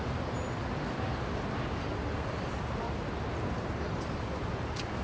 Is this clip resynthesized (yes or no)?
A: no